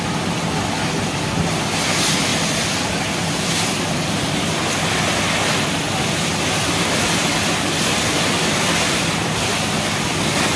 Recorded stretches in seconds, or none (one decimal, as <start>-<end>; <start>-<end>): 0.0-10.6